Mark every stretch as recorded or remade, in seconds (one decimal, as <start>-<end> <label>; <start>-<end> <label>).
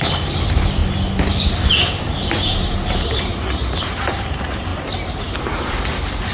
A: 0.0-0.8 remade; 0.8-2.0 recorded; 2.0-4.7 remade; 4.7-5.2 recorded; 5.2-6.3 remade